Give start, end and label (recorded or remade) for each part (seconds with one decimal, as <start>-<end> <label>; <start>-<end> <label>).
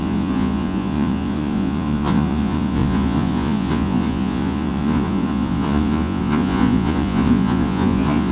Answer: 0.0-8.3 remade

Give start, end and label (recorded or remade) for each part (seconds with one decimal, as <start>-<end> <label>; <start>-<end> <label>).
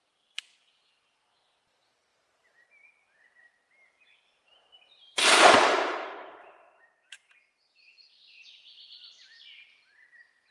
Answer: 0.0-2.1 recorded; 2.1-7.3 remade; 7.3-10.5 recorded